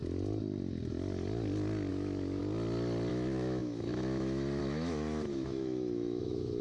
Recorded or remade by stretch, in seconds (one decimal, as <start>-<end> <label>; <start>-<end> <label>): 0.0-1.9 recorded; 1.9-2.4 remade; 2.4-3.1 recorded; 3.1-6.6 remade